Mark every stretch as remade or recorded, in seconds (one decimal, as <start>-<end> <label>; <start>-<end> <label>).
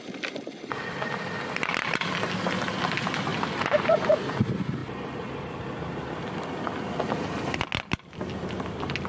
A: 0.0-9.1 recorded